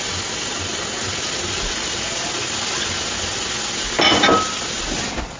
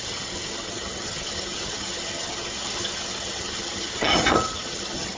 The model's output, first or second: second